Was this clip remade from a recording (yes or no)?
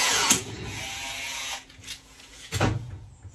yes